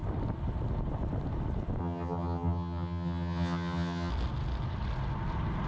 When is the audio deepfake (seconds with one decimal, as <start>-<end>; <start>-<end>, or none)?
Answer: 1.8-4.1